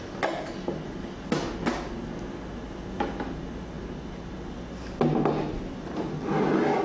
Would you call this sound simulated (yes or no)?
no